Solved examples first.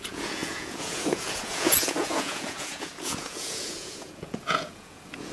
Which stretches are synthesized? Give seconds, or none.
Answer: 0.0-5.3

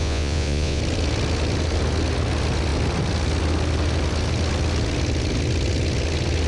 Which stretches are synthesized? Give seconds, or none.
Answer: 0.0-0.8